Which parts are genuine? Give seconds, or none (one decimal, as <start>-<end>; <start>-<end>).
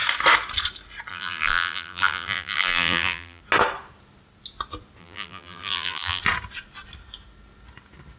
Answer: 0.0-1.1; 3.4-5.0; 6.2-8.2